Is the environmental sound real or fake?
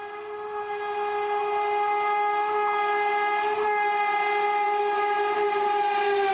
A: real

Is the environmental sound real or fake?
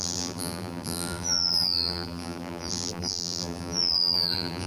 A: fake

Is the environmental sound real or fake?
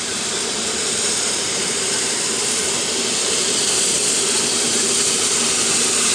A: fake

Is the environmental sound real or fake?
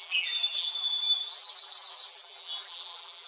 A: fake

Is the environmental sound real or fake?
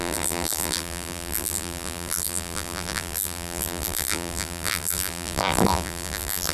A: fake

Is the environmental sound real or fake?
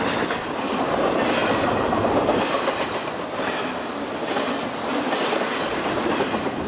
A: fake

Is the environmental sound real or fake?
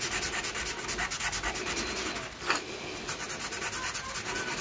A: real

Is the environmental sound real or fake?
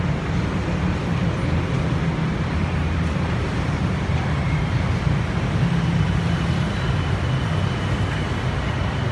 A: real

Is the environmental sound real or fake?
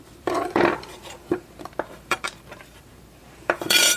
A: fake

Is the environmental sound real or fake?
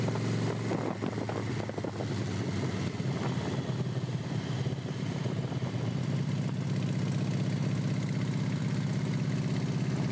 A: real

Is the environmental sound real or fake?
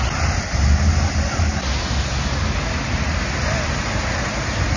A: real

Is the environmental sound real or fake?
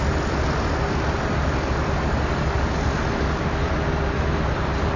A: fake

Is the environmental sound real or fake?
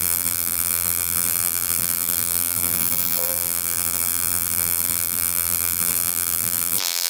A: fake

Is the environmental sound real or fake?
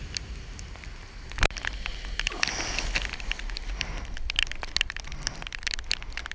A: real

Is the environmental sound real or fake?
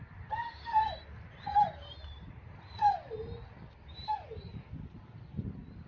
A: fake